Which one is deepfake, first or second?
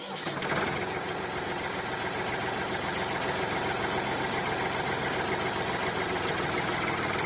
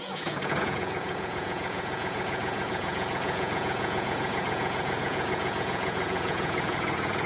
second